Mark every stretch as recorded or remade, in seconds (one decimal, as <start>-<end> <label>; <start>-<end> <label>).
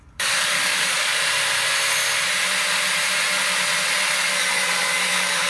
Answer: 0.0-1.2 remade; 1.2-4.5 recorded; 4.5-5.5 remade